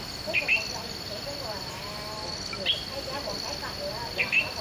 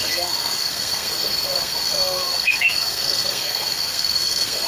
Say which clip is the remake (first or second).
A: second